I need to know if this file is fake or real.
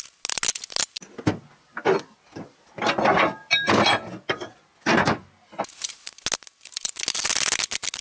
real